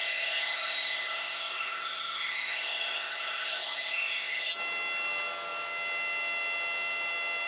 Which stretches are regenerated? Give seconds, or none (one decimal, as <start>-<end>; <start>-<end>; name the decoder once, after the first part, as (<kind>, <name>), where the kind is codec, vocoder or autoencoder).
0.0-4.5 (codec, ZipCodec)